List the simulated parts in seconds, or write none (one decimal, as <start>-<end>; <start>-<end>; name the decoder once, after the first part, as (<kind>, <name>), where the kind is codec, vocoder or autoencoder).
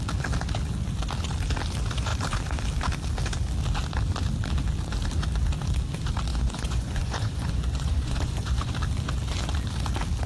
6.3-8.7 (vocoder, Vocos)